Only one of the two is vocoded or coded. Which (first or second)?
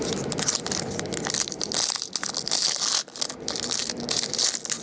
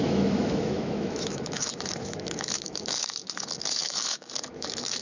second